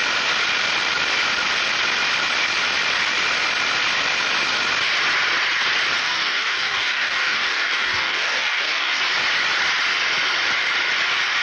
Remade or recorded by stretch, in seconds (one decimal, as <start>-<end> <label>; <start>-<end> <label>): 0.0-6.0 recorded; 6.0-9.0 remade; 9.0-11.4 recorded